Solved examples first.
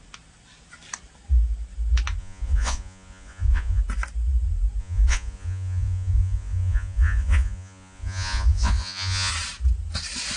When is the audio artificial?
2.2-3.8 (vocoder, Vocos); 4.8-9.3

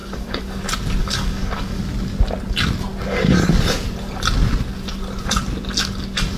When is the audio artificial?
0.0-0.6 (codec, DAC); 1.0-1.8

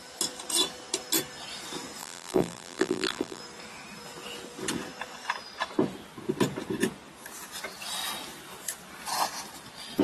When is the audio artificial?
2.0-3.4 (vocoder, BigVGAN v2)

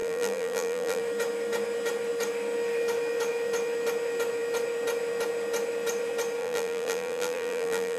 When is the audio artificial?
0.0-1.0 (vocoder, BigVGAN v2); 6.4-8.0

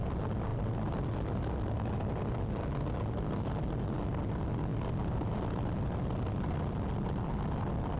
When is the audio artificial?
none